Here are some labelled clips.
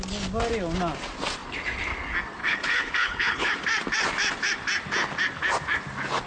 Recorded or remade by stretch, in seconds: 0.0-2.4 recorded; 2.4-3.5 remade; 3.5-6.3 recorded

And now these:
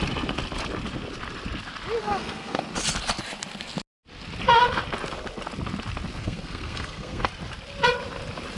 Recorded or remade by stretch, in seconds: 0.0-2.0 recorded; 2.0-2.6 remade; 2.6-6.2 recorded; 6.2-7.3 remade; 7.3-8.6 recorded